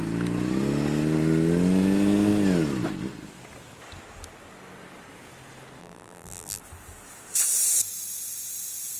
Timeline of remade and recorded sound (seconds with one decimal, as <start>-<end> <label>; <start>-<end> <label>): 0.0-5.8 recorded; 5.8-6.6 remade; 6.6-9.0 recorded